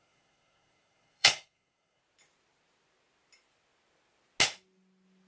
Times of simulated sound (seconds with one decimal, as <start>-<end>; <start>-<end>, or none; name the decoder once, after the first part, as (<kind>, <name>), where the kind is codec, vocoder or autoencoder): 0.0-2.0 (codec, SNAC)